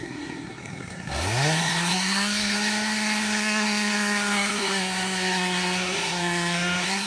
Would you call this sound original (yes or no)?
no